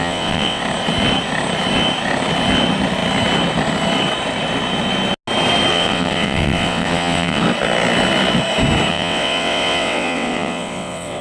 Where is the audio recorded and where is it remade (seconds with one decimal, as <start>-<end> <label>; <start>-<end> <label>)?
0.0-0.6 remade; 0.6-5.7 recorded; 5.7-7.4 remade; 7.4-8.9 recorded; 8.9-11.2 remade